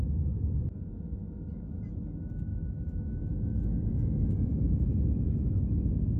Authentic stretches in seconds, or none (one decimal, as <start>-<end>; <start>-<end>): 0.0-1.2; 1.8-2.5; 3.9-4.5; 5.8-6.2